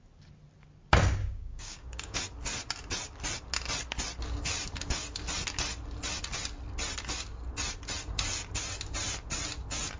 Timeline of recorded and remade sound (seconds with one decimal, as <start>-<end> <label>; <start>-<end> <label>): 0.0-1.2 recorded; 1.2-2.2 remade; 2.2-10.0 recorded